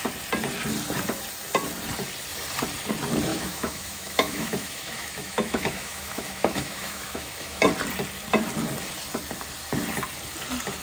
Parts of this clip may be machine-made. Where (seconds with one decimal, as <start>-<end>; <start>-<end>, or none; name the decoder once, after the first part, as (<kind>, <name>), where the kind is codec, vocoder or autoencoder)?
3.3-7.6 (autoencoder, DAC-VAE)